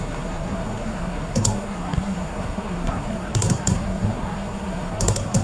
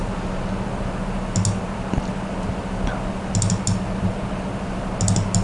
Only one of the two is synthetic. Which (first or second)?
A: first